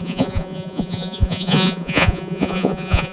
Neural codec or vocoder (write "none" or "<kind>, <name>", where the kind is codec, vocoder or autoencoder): vocoder, Vocos